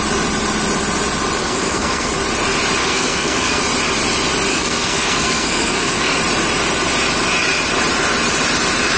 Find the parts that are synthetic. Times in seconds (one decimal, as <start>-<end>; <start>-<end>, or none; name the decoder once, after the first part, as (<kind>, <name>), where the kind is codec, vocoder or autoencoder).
1.4-2.1 (codec, SNAC); 2.8-3.6; 4.5-6.2